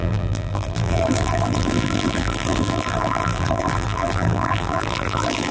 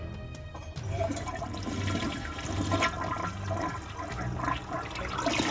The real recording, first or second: second